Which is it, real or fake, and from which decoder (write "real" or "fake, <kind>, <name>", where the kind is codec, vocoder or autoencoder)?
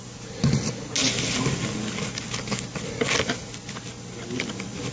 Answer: real